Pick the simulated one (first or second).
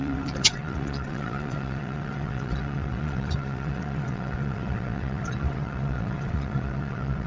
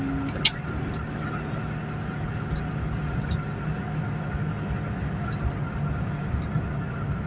first